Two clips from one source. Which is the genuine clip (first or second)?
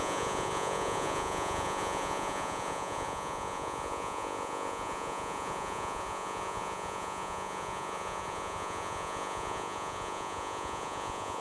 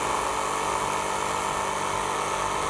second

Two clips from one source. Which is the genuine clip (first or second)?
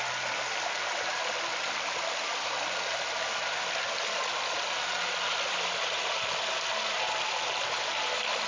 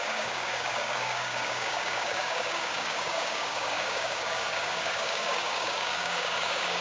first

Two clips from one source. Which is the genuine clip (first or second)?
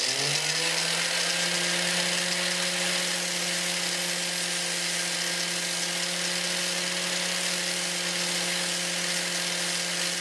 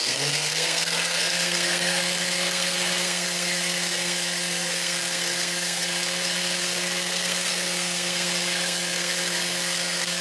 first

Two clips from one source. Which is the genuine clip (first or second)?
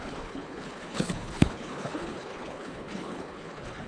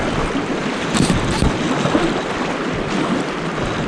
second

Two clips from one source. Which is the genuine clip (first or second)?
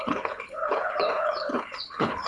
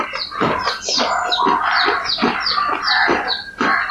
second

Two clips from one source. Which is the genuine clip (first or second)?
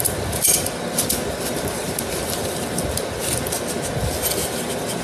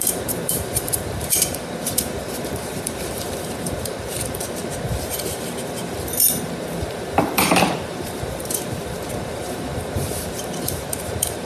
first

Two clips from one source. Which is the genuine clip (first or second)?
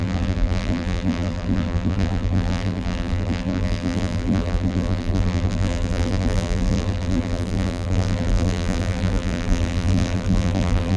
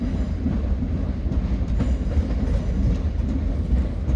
second